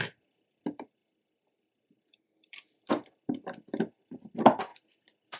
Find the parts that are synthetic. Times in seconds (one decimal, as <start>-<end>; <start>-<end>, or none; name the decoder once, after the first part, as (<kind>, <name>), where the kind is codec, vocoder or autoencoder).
0.0-5.4 (vocoder, BigVGAN v2)